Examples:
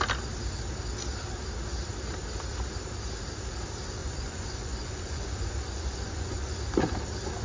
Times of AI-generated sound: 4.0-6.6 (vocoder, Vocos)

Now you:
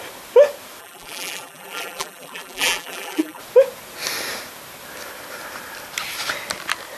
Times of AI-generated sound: 0.8-3.4 (vocoder, BigVGAN v2)

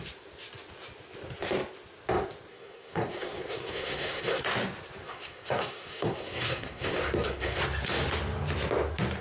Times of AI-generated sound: 2.5-4.4 (codec, SNAC); 5.0-7.6

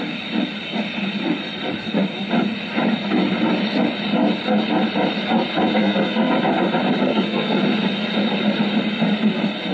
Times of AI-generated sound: 5.8-6.3 (codec, SNAC); 7.1-7.6

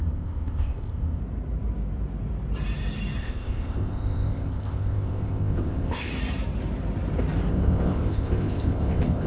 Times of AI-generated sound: 0.0-1.2 (codec, ZipCodec); 3.2-6.1; 7.5-9.3

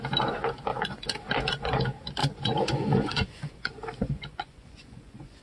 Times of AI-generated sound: 0.7-1.8 (vocoder, Vocos); 2.2-5.4